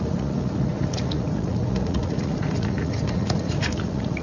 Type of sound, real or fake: fake